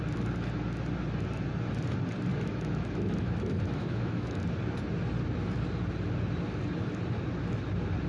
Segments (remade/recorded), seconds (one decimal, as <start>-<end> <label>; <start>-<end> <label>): 0.0-2.3 recorded; 2.3-4.4 remade; 4.4-8.1 recorded

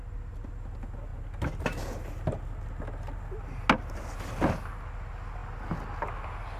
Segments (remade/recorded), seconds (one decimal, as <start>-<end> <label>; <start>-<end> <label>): 0.0-6.6 recorded

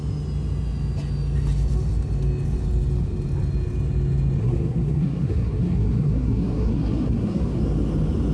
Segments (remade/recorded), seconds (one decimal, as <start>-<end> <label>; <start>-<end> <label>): 0.0-4.4 recorded; 4.4-7.6 remade; 7.6-8.3 recorded